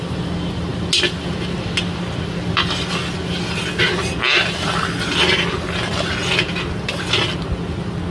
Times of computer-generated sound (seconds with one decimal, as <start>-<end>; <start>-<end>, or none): none

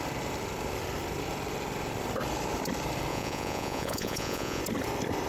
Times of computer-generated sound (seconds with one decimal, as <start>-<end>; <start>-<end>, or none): 3.1-4.6

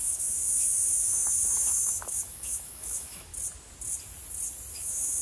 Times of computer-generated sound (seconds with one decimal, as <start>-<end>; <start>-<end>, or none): 0.0-3.3; 4.7-5.2

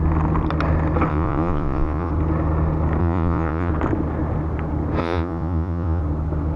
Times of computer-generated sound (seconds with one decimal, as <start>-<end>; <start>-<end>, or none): 1.1-2.1; 3.0-3.7; 5.0-6.0

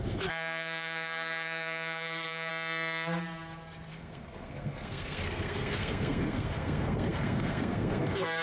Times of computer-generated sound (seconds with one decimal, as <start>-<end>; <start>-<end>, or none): 0.0-2.5; 3.9-8.4

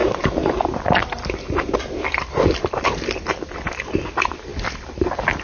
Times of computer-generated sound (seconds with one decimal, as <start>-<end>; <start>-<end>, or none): 0.0-3.2